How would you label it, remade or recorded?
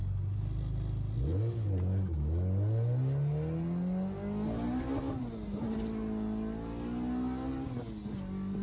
recorded